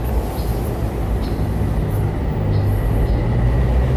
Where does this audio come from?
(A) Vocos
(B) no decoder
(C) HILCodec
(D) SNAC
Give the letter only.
B